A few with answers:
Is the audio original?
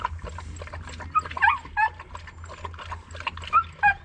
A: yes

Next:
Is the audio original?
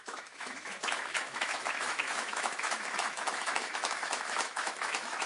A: no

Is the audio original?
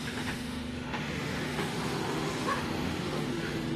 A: no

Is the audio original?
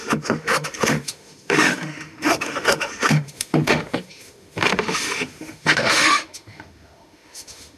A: no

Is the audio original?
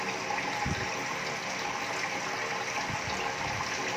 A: yes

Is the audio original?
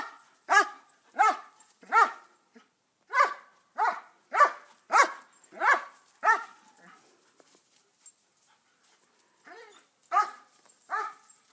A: yes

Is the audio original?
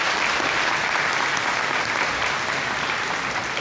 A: yes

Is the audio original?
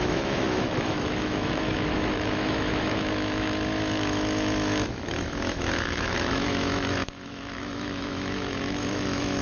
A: no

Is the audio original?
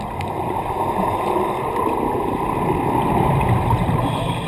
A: yes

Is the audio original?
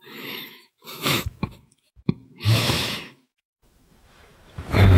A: no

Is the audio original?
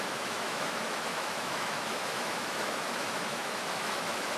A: no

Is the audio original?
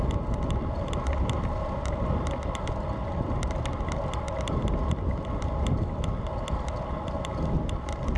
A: yes